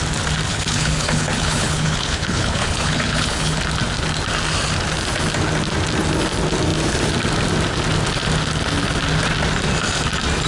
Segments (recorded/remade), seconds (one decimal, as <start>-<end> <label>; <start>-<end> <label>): 0.0-0.5 recorded; 0.5-3.6 remade; 3.6-10.5 recorded